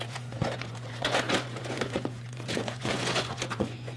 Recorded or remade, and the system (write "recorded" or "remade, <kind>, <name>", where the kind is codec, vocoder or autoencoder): remade, vocoder, Vocos